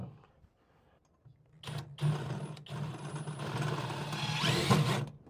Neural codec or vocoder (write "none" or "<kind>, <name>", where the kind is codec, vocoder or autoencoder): none